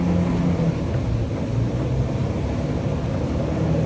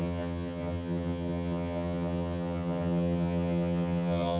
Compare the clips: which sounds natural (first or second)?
first